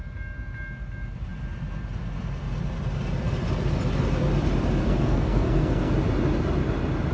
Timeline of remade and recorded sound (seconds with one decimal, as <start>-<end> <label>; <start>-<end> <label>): 0.0-4.8 recorded; 4.8-5.9 remade; 5.9-7.1 recorded